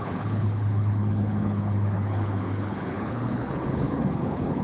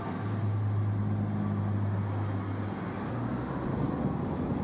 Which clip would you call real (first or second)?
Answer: second